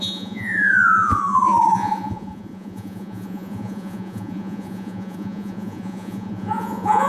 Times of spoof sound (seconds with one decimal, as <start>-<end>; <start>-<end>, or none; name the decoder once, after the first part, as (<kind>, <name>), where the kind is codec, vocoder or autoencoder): 0.0-7.1 (vocoder, Vocos)